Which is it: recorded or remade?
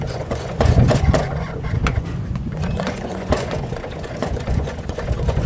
remade